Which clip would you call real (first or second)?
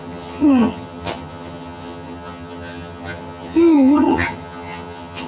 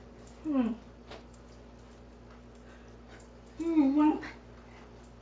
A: second